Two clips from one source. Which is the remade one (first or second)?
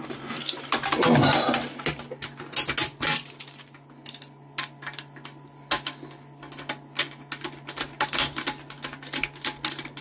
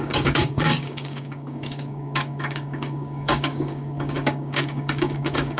second